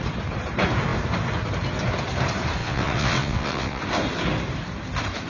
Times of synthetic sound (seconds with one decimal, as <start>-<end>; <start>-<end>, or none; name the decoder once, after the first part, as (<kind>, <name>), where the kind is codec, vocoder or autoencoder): 2.6-3.8 (vocoder, WaveNeXt)